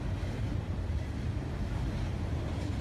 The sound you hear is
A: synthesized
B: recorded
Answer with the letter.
B